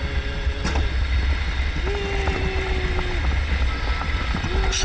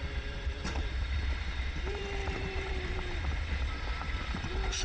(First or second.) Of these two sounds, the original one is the first